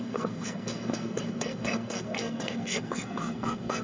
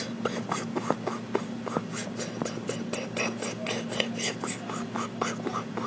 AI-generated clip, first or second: first